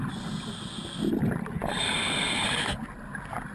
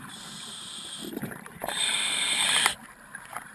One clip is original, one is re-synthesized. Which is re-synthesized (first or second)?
second